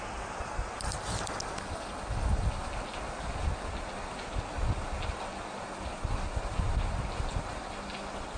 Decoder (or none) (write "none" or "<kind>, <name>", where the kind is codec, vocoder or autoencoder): none